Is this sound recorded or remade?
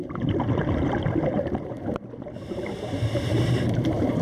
remade